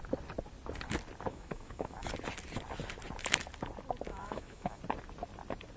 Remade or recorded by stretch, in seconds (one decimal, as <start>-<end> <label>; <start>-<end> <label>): 0.0-1.3 recorded; 1.3-2.1 remade; 2.1-4.1 recorded; 4.1-4.8 remade; 4.8-5.8 recorded

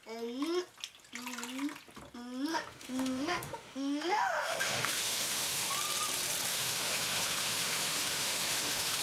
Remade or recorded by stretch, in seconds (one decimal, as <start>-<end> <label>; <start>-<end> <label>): 0.0-2.5 recorded; 2.5-5.7 remade; 5.7-6.5 recorded; 6.5-9.0 remade

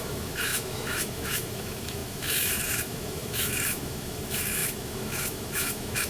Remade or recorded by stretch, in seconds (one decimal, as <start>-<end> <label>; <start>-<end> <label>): 0.0-6.1 remade

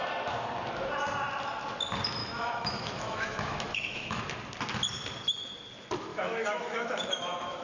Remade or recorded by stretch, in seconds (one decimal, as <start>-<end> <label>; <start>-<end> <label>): 0.0-2.2 recorded; 2.2-4.2 remade; 4.2-6.1 recorded; 6.1-7.6 remade